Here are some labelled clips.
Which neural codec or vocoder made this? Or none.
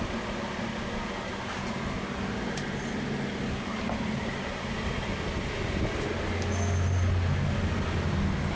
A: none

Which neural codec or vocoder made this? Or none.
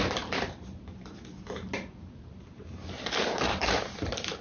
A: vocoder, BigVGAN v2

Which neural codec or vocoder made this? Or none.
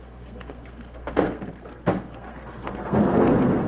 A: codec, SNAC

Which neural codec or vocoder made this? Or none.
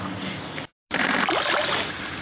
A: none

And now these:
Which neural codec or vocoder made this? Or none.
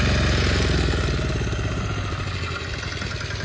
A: none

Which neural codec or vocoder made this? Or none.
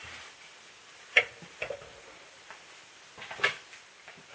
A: none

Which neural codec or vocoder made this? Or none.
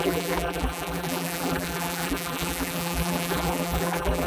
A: vocoder, BigVGAN v2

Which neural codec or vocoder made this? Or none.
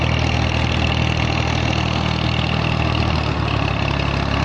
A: none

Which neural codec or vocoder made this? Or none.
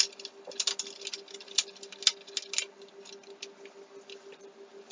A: none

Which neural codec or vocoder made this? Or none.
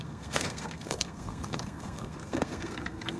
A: codec, SNAC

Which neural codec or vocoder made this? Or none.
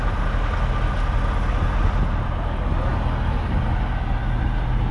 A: none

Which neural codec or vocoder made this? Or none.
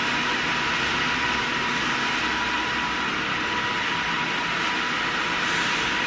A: none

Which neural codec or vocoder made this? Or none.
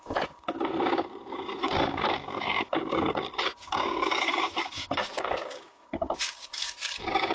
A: codec, DAC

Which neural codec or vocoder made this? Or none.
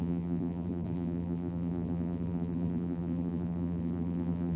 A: vocoder, BigVGAN v2